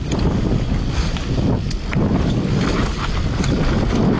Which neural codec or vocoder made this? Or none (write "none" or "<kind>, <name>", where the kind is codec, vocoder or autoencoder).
none